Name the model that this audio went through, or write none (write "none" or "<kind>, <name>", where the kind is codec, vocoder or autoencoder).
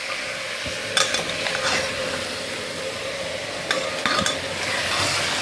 none